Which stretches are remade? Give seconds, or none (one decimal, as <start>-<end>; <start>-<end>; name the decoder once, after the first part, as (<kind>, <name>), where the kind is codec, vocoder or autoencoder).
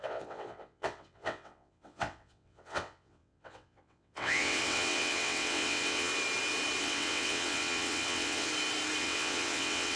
0.0-6.1 (vocoder, WaveNeXt); 6.8-8.5; 9.0-10.0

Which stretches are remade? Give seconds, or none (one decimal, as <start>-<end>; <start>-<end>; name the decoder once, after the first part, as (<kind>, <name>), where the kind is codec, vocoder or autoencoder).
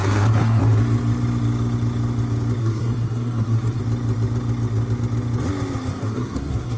0.0-0.6 (codec, SNAC); 2.6-3.8; 5.9-6.8